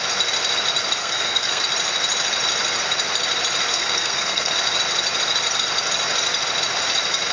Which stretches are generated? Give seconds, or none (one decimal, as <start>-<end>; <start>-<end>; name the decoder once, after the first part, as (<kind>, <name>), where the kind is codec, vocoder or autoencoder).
1.0-1.6 (codec, SNAC); 3.7-4.5